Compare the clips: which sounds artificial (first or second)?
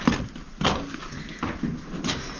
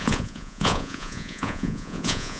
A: second